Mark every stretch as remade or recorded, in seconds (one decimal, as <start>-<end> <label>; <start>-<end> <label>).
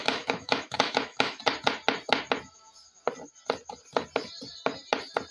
0.0-1.4 remade; 1.4-5.3 recorded